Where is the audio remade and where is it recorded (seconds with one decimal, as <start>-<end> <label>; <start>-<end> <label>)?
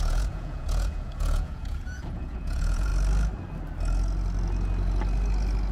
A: 0.0-2.9 remade; 2.9-5.7 recorded